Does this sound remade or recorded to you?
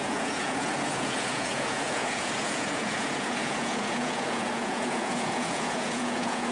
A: remade